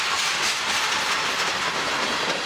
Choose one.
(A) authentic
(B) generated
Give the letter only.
A